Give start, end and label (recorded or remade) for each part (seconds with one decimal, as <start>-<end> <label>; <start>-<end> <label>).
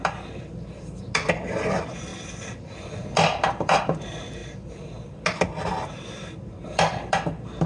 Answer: 0.0-7.7 recorded